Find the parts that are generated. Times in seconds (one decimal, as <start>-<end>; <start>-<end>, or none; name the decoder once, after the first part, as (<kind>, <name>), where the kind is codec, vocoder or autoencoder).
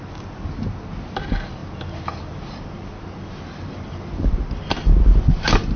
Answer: none